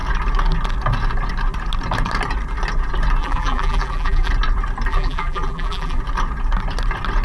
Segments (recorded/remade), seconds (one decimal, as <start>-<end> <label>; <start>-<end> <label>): 0.0-3.2 recorded; 3.2-4.3 remade; 4.3-4.9 recorded; 4.9-6.0 remade; 6.0-7.2 recorded